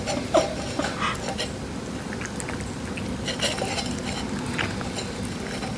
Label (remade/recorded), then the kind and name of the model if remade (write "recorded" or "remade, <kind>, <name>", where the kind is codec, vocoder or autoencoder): recorded